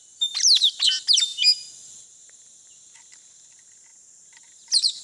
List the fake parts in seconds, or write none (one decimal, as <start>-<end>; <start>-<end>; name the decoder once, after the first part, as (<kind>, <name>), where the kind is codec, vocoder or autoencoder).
none